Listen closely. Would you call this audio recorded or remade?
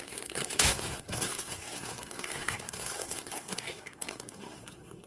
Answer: remade